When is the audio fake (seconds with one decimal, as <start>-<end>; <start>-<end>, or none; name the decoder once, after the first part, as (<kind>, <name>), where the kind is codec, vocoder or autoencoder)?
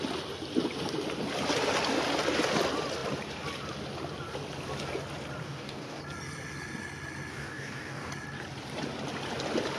5.4-6.0 (codec, DAC); 7.3-8.1